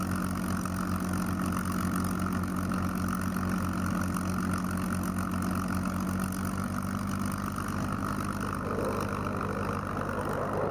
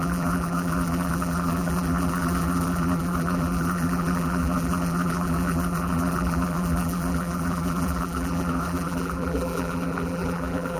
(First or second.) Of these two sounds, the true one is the first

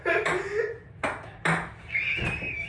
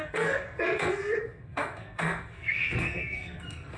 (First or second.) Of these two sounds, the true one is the first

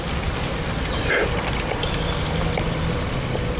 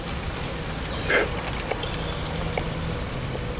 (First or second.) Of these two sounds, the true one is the second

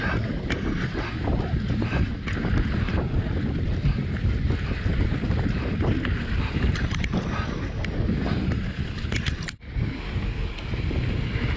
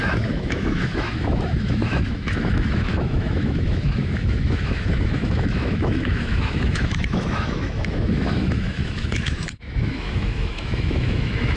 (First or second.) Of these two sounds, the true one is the first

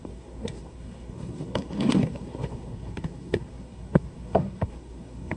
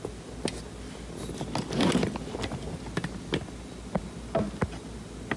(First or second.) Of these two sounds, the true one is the second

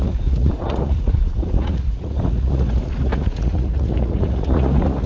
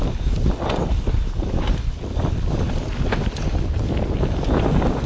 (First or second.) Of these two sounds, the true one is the second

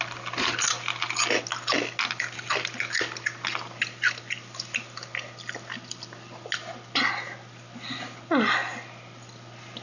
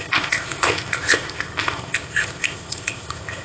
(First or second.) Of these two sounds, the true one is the first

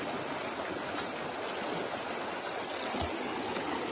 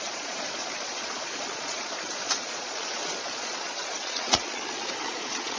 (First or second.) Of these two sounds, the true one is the first